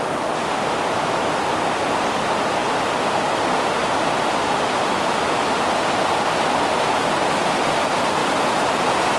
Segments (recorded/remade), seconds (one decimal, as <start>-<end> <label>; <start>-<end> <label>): 0.0-9.2 recorded